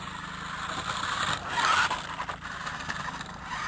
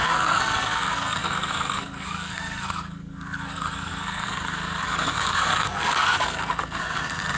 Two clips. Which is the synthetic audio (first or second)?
second